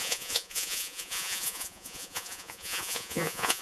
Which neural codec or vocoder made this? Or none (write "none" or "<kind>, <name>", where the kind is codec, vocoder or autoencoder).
vocoder, Vocos